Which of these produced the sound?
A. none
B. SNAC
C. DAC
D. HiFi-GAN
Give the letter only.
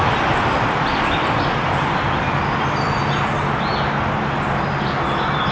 A